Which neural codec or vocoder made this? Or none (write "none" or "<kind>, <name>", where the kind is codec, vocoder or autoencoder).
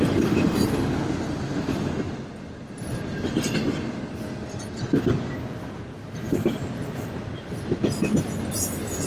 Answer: none